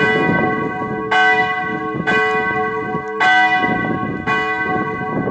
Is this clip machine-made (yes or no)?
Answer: no